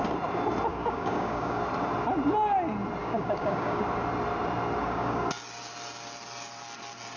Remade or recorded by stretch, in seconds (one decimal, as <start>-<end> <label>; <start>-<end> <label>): 0.0-0.7 recorded; 0.7-1.6 remade; 1.6-3.0 recorded; 3.0-3.8 remade; 3.8-4.8 recorded; 4.8-5.3 remade; 5.3-7.2 recorded